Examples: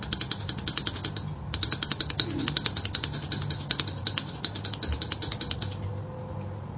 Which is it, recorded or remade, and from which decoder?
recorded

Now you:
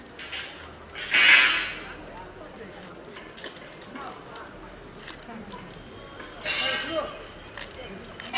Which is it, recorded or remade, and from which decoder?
recorded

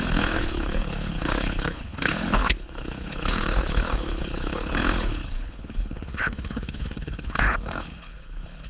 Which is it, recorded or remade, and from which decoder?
remade, codec, HILCodec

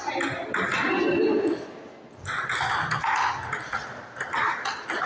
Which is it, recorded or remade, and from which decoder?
recorded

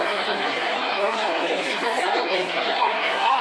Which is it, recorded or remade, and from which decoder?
remade, codec, SNAC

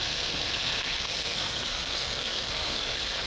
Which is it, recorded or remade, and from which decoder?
remade, codec, SNAC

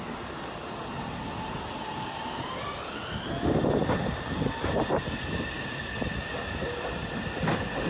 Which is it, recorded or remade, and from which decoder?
recorded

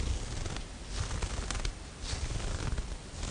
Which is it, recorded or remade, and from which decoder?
recorded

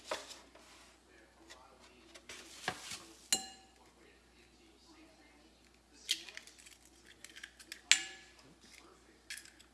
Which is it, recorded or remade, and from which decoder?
recorded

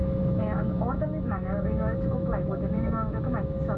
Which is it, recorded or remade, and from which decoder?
remade, autoencoder, DAC-VAE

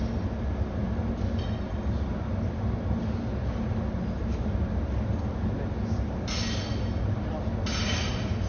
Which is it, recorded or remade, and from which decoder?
recorded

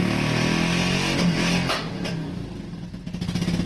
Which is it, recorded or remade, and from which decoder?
recorded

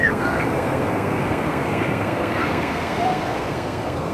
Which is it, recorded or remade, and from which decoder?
remade, codec, SNAC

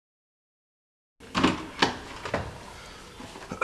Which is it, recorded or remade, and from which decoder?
recorded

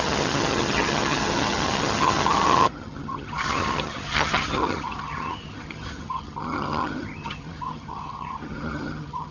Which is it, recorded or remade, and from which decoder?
remade, vocoder, HiFi-GAN